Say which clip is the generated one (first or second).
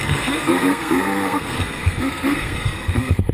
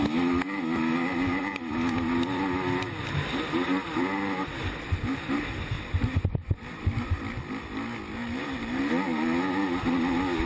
first